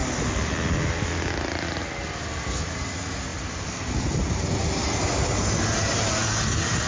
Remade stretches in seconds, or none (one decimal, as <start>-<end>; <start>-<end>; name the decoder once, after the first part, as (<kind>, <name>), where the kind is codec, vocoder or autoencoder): none